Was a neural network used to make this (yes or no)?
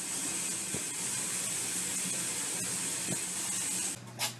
no